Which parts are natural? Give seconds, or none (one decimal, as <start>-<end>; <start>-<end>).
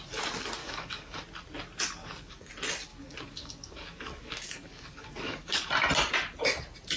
0.0-0.6; 1.2-2.0; 2.5-2.9; 5.7-7.0